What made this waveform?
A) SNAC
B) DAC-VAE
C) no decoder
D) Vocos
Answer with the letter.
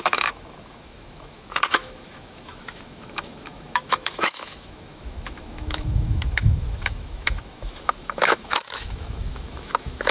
B